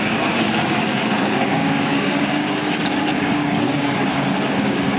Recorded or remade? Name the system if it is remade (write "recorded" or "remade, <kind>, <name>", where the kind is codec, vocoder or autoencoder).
remade, codec, DAC